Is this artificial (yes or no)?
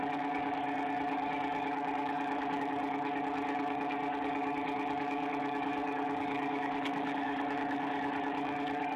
yes